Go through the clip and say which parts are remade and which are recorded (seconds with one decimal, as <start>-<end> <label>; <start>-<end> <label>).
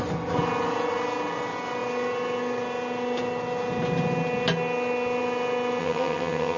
0.0-5.8 recorded; 5.8-6.6 remade